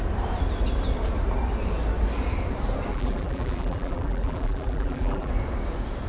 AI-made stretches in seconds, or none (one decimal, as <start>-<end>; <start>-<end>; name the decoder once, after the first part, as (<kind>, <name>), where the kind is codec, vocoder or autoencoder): 2.9-5.3 (vocoder, BigVGAN v2)